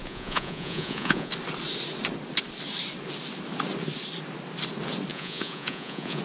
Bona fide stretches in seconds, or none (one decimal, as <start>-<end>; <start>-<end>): 1.3-5.1